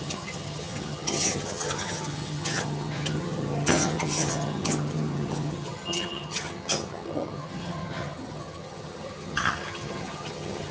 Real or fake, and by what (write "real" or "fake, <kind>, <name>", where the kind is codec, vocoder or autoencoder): fake, vocoder, HiFi-GAN